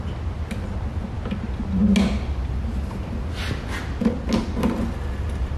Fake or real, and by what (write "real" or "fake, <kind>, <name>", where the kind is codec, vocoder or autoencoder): real